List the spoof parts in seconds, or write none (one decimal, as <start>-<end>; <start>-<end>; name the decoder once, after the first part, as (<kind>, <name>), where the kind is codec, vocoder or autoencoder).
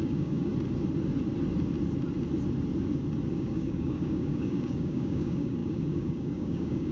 0.0-0.5 (codec, DAC); 3.3-6.9